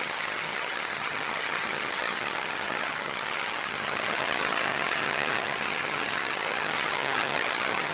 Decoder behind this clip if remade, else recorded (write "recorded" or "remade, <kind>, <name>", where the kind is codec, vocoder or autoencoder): remade, vocoder, HiFi-GAN